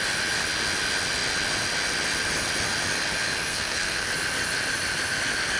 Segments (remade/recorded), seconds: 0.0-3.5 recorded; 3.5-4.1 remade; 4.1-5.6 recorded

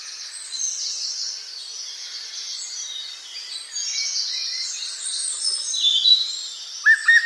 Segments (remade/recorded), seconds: 0.0-7.3 recorded

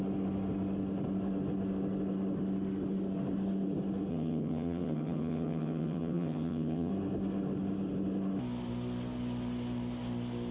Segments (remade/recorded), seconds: 0.0-4.1 recorded; 4.1-6.9 remade; 6.9-10.5 recorded

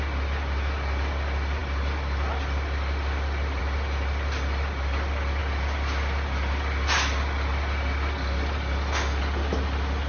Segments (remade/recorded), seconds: 0.0-10.1 recorded

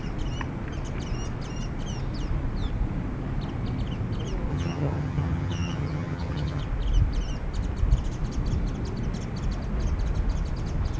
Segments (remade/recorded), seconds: 0.0-4.5 recorded; 4.5-6.6 remade; 6.6-11.0 recorded

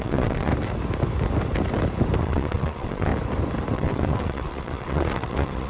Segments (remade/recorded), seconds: 0.0-0.5 remade; 0.5-2.2 recorded; 2.2-3.1 remade; 3.1-3.7 recorded; 3.7-5.7 remade